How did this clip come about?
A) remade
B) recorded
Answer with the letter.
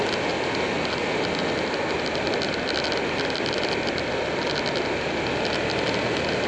B